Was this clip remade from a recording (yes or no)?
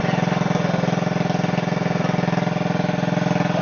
no